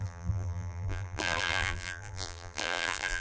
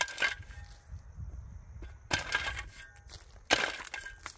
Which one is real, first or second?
second